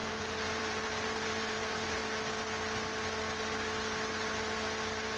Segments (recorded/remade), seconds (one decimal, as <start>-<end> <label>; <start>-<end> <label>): 0.0-2.0 remade; 2.0-5.2 recorded